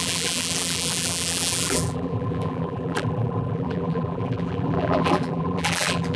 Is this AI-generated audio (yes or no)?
yes